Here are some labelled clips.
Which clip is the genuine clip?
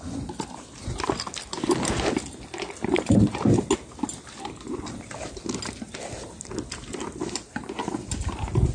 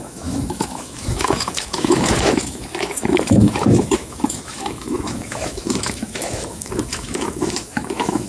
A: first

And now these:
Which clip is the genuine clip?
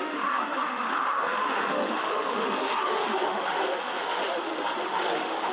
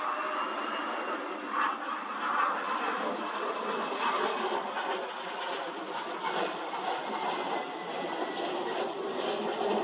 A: second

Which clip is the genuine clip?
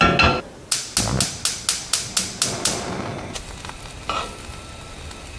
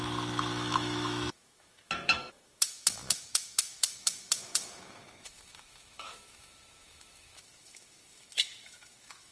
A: first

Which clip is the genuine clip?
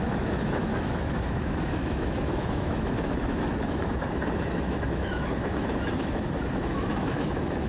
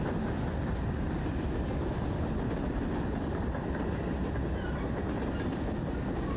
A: second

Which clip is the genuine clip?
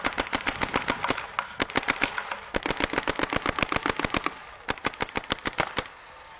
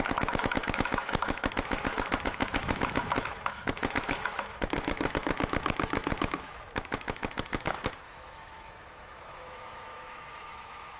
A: first